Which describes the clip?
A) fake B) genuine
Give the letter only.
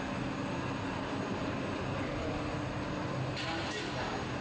B